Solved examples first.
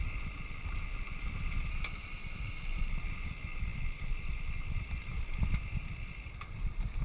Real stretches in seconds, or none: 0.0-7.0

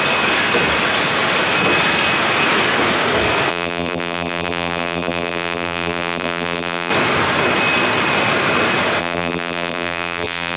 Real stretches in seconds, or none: 0.0-3.5; 6.9-9.0

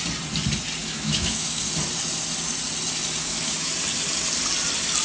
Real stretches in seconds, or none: 0.0-0.8; 1.6-3.2; 3.7-5.0

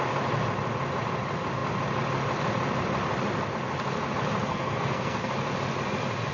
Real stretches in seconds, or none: 0.0-4.5; 5.3-6.3

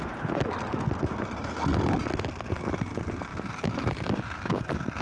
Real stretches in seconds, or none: 0.0-5.0

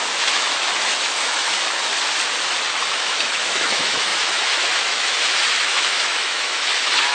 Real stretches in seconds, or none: 1.9-2.9

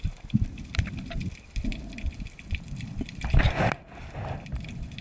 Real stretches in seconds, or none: 0.0-1.7; 3.5-5.0

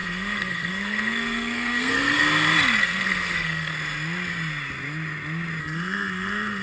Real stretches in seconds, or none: 2.2-2.8; 3.7-5.6